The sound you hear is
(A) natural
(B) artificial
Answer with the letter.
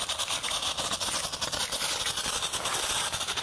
A